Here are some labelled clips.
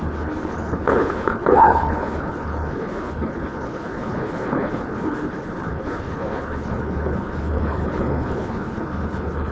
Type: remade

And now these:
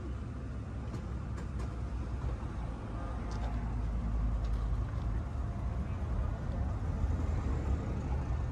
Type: recorded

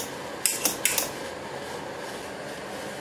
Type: recorded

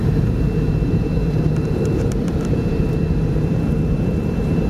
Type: remade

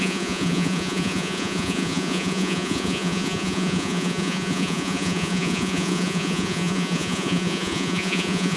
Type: remade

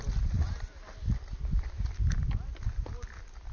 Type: recorded